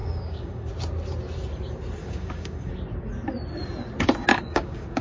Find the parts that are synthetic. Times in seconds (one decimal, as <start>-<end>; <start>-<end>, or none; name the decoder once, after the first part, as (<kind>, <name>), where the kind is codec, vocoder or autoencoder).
0.0-0.7 (codec, DAC); 2.0-2.7; 4.3-5.0